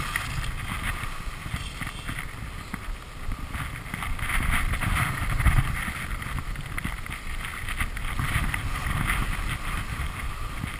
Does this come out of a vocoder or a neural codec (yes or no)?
no